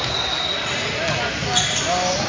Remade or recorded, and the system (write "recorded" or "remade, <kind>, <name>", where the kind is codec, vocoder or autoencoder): recorded